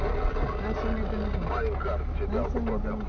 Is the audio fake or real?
real